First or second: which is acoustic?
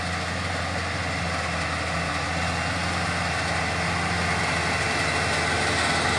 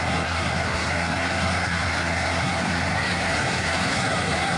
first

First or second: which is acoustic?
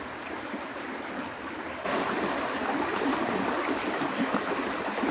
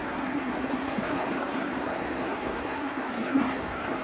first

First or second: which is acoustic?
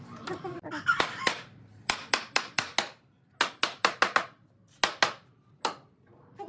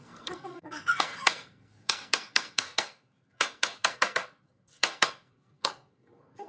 first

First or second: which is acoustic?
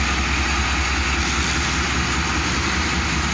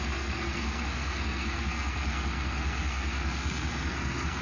first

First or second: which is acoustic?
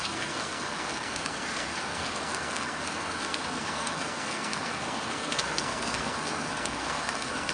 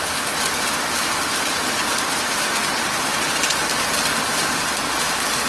second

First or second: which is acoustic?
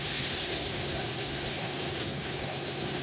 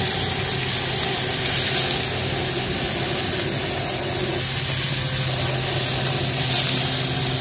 second